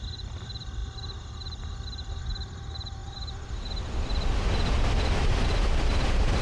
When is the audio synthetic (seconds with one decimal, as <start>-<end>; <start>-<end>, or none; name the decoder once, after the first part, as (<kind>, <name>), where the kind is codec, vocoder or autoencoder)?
0.0-0.8 (vocoder, BigVGAN v2); 2.2-3.0; 5.1-6.4